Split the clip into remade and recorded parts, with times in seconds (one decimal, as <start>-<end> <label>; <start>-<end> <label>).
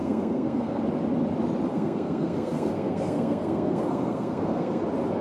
0.0-0.8 remade; 0.8-1.7 recorded; 1.7-4.8 remade; 4.8-5.2 recorded